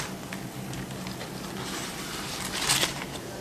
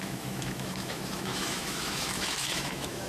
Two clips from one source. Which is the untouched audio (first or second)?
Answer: first